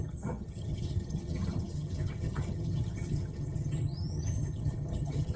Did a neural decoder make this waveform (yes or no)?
yes